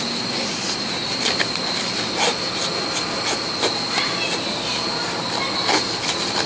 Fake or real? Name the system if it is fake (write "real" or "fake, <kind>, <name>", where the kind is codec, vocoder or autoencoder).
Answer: real